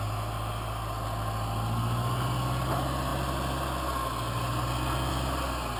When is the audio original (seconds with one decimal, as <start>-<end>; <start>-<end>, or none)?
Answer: 0.0-5.8